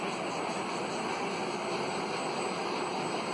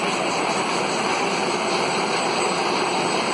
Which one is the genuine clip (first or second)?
first